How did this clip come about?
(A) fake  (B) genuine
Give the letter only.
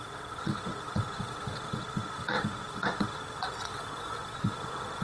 A